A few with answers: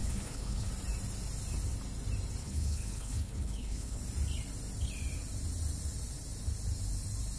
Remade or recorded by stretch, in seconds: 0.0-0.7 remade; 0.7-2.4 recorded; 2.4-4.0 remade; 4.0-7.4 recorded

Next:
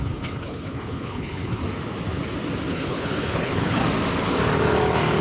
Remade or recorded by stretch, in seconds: 0.0-1.6 remade; 1.6-2.7 recorded; 2.7-3.8 remade; 3.8-5.2 recorded

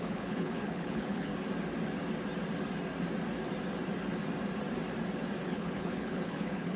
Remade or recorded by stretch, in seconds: 0.0-1.3 remade; 1.3-5.4 recorded; 5.4-6.8 remade

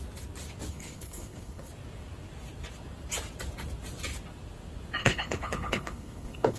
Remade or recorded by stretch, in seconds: 0.0-0.7 recorded; 0.7-1.7 remade; 1.7-5.0 recorded; 5.0-6.6 remade

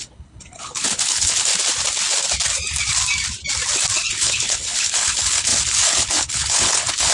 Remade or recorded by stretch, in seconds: 0.0-1.5 remade; 1.5-4.1 recorded; 4.1-7.1 remade